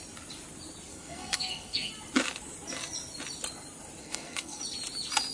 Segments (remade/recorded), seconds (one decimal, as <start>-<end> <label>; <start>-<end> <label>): 0.0-0.9 recorded; 0.9-1.9 remade; 1.9-4.0 recorded; 4.0-4.6 remade; 4.6-5.3 recorded